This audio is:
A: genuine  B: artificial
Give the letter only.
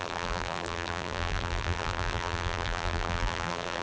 B